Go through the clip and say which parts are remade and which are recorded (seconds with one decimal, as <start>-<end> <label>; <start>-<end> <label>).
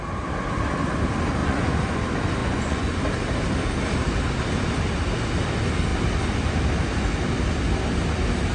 0.0-1.4 recorded; 1.4-2.0 remade; 2.0-2.4 recorded; 2.4-3.0 remade; 3.0-8.5 recorded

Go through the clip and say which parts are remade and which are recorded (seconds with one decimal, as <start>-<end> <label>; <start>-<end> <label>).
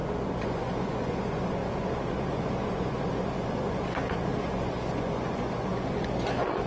0.0-6.7 remade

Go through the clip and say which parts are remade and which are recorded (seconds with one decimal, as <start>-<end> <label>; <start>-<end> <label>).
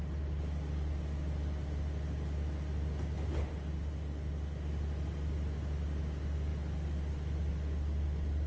0.0-8.5 recorded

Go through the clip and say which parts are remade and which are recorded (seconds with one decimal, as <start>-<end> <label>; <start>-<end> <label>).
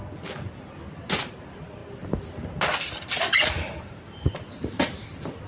0.0-5.5 recorded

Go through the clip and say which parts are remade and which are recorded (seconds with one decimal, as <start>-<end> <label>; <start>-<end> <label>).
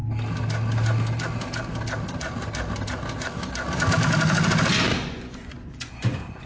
0.0-4.9 recorded; 4.9-6.5 remade